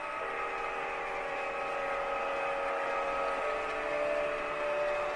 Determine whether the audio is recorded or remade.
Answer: recorded